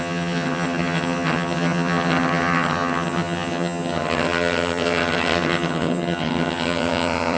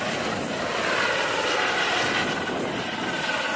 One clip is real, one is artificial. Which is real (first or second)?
second